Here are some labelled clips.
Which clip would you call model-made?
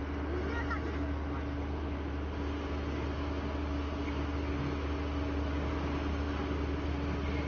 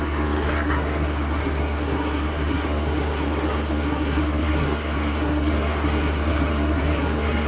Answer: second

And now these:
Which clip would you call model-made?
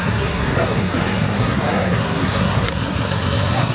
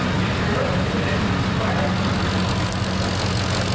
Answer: first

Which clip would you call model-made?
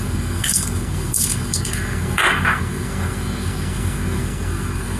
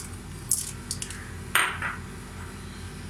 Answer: first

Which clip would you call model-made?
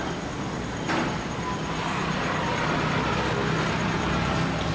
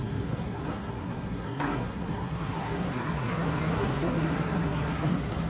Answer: second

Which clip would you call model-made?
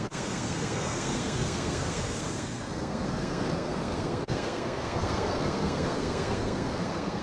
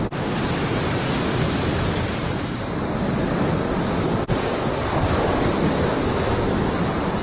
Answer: first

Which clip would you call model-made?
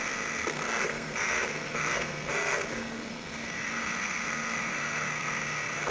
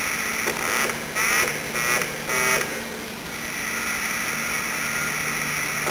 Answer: first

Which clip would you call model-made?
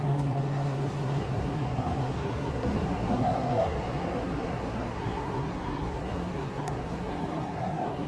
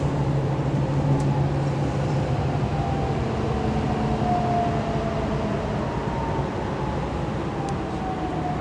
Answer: first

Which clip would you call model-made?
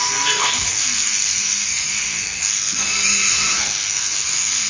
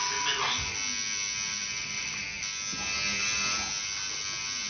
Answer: first